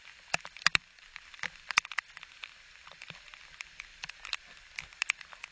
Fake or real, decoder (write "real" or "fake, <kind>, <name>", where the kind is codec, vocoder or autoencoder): real